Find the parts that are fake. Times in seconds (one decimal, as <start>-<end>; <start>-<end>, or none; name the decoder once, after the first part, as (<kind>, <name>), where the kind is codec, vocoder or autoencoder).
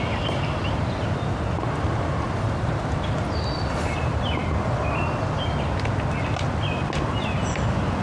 none